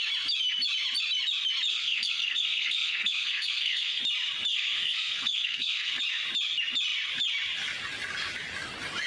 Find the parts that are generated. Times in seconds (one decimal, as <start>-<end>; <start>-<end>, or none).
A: 1.7-4.0; 4.5-6.0